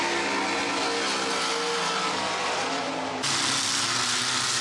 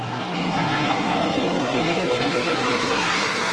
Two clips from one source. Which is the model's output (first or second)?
second